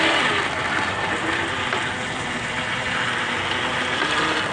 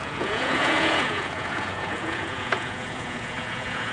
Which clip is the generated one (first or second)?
second